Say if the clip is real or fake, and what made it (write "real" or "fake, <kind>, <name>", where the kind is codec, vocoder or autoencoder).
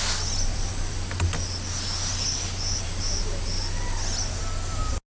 real